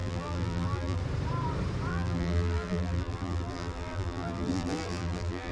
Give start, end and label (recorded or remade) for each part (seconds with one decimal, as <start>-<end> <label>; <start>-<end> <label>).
0.0-1.0 remade; 1.0-1.9 recorded; 1.9-5.5 remade